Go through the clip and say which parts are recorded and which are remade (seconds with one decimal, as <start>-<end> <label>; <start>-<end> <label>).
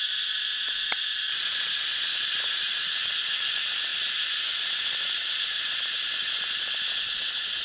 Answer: 0.0-7.6 recorded